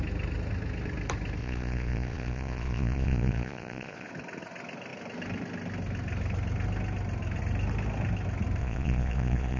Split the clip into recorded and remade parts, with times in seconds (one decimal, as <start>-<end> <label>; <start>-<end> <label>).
0.0-1.4 recorded; 1.4-4.1 remade; 4.1-8.6 recorded; 8.6-9.6 remade